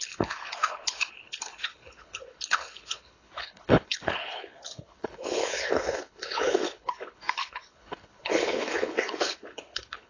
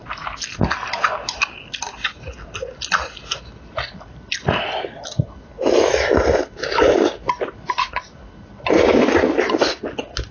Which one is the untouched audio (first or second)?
second